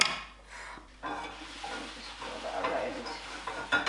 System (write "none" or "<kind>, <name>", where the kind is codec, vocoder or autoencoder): none